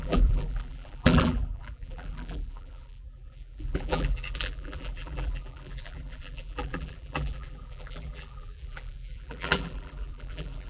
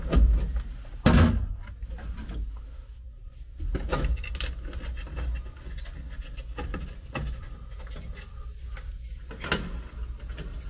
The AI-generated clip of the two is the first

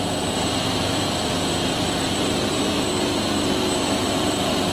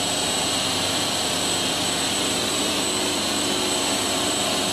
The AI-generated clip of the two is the first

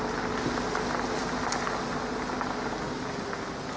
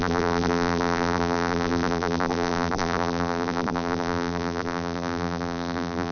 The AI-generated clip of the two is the second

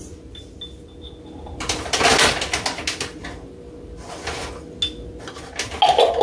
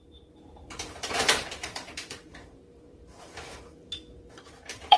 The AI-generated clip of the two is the second